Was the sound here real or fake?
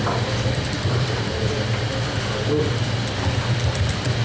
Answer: fake